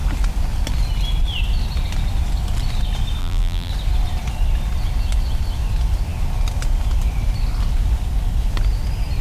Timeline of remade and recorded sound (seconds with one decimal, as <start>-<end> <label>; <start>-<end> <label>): 0.0-3.2 recorded; 3.2-3.7 remade; 3.7-9.2 recorded